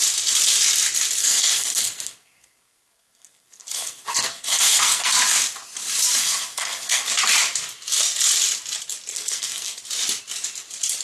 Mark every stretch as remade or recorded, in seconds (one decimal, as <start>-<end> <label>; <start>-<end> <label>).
0.0-1.2 recorded; 1.2-5.1 remade; 5.1-6.2 recorded; 6.2-7.1 remade; 7.1-9.1 recorded; 9.1-9.8 remade; 9.8-11.0 recorded